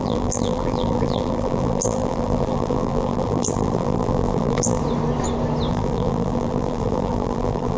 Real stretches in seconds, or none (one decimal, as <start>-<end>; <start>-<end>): 4.8-5.7